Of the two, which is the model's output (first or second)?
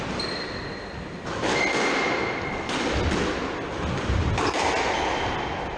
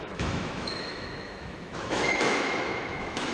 second